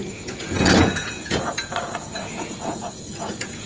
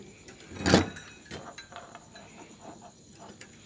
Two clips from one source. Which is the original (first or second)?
second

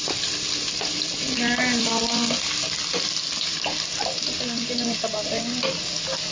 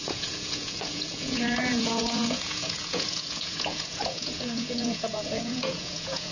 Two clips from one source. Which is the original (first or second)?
first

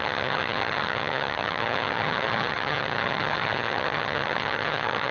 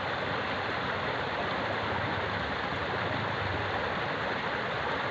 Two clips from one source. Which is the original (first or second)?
second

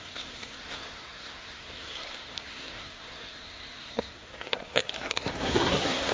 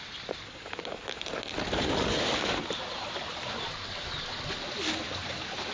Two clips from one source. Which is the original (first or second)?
second